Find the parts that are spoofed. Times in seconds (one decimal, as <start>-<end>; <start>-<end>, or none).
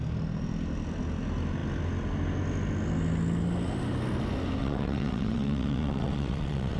4.6-6.8